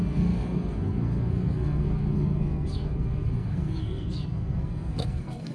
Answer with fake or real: fake